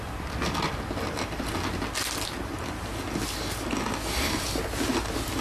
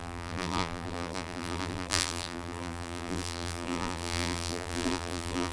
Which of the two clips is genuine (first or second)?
first